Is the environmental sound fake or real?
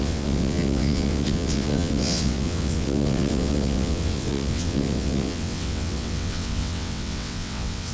fake